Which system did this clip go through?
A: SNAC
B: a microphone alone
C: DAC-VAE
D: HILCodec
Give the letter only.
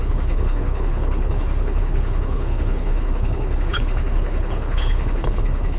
D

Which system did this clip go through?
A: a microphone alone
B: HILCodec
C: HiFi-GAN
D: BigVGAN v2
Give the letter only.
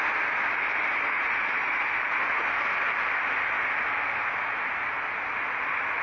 A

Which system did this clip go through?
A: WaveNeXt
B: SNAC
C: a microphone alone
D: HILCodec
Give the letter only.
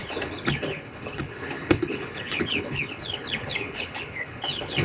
D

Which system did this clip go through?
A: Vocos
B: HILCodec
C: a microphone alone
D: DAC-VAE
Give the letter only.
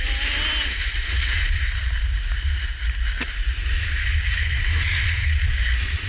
C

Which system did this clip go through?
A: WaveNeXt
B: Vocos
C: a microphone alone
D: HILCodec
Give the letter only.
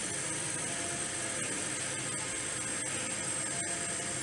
C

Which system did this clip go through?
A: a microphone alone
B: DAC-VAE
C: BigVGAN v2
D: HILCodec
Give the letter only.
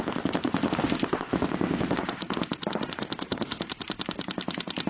A